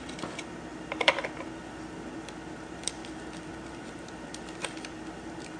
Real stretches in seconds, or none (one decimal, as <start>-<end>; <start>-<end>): 3.0-3.7